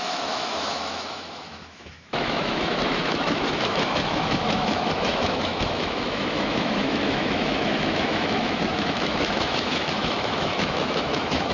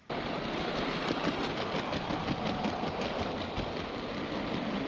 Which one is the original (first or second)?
second